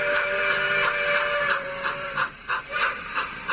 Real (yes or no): no